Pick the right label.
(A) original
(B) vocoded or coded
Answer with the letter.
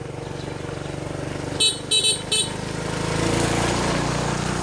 A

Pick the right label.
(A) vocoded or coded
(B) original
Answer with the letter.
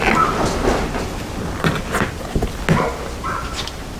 B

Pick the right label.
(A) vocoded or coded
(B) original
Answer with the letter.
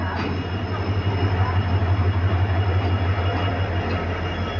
B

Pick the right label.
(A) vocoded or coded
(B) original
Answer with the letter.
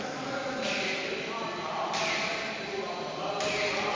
B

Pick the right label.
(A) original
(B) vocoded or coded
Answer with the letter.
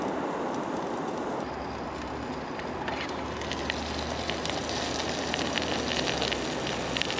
A